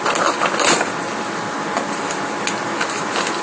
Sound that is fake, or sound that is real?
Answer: real